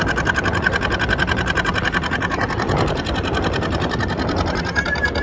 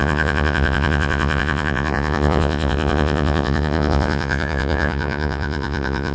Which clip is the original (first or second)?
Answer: first